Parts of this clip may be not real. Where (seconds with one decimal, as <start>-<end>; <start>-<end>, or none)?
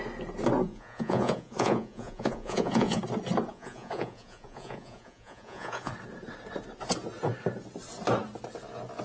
0.7-3.0; 3.5-5.9